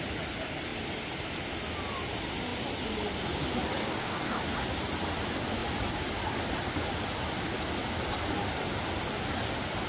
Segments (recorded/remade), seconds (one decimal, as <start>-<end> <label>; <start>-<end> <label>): 0.0-3.8 recorded; 3.8-4.4 remade; 4.4-9.9 recorded